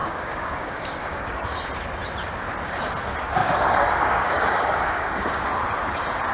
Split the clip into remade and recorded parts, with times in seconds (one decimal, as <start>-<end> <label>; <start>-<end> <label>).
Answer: 0.0-1.6 remade; 1.6-3.4 recorded; 3.4-5.5 remade; 5.5-6.3 recorded